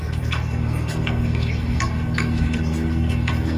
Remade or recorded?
remade